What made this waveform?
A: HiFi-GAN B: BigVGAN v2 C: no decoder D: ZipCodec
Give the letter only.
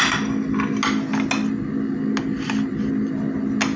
C